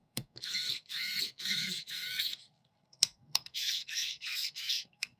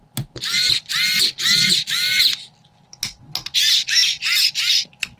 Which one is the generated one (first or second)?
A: first